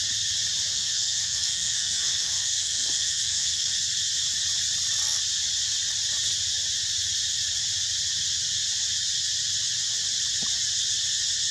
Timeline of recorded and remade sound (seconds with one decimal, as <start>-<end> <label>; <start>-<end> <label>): 0.0-0.7 recorded; 0.7-3.8 remade; 3.8-11.5 recorded